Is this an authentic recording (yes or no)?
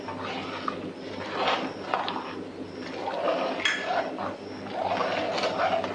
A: yes